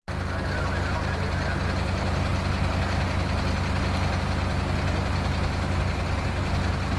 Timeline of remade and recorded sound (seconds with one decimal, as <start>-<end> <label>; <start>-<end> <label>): 0.0-7.0 recorded